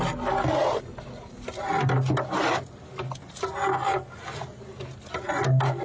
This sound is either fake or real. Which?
real